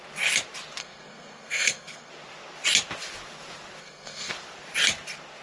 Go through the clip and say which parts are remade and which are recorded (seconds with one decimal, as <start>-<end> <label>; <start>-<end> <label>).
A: 0.0-0.8 recorded; 0.8-2.1 remade; 2.1-3.8 recorded; 3.8-4.3 remade; 4.3-5.4 recorded